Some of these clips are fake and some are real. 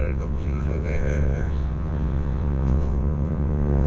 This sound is fake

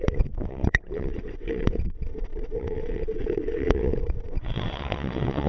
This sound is fake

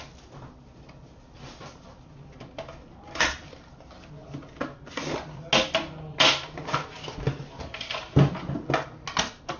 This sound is real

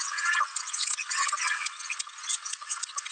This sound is fake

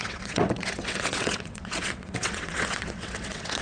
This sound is fake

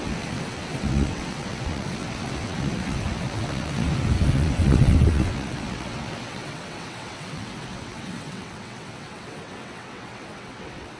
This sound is fake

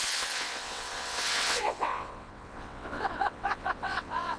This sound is fake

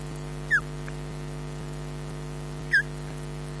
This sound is real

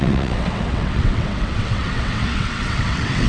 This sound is fake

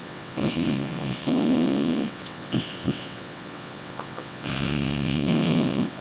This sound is fake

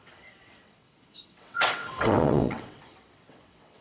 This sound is fake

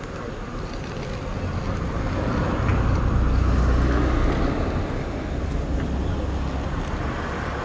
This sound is real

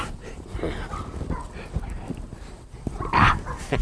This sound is real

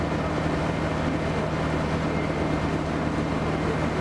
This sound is real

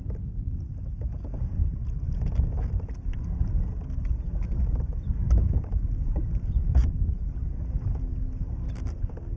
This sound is real